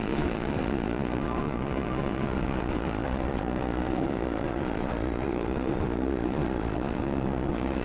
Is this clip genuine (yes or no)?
no